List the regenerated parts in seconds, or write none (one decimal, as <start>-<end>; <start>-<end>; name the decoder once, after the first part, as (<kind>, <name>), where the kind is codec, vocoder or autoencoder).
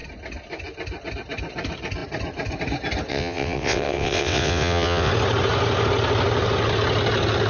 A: 3.1-5.1 (vocoder, WaveNeXt)